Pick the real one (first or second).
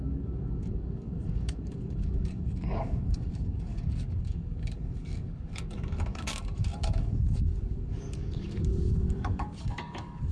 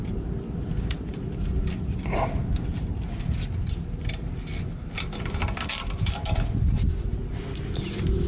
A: second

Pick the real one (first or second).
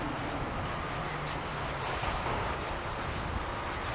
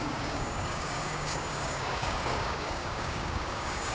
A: first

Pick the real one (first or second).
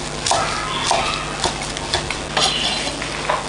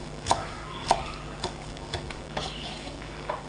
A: first